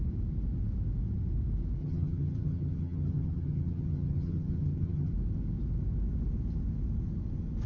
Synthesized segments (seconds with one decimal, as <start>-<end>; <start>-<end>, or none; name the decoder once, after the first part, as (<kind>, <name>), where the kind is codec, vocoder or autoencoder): 1.8-5.1 (vocoder, HiFi-GAN)